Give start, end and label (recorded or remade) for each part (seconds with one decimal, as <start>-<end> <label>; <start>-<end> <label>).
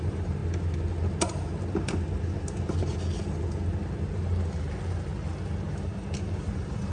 0.0-0.4 remade; 0.4-4.5 recorded; 4.5-5.1 remade; 5.1-5.7 recorded; 5.7-6.9 remade